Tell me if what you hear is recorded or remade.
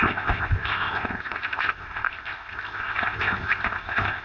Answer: remade